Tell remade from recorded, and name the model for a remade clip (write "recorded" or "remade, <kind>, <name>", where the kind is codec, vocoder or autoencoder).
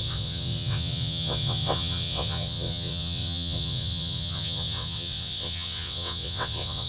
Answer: remade, vocoder, WaveNeXt